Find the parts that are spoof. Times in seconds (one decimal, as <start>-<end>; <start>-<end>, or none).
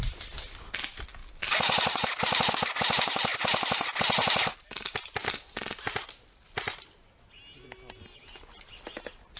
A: none